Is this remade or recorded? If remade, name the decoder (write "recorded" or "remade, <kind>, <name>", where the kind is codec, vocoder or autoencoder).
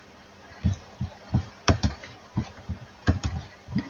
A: remade, vocoder, BigVGAN v2